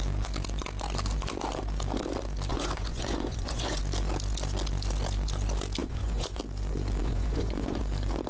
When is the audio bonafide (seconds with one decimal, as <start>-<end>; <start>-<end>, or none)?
0.0-2.5; 3.8-5.8; 6.4-7.0; 7.8-8.3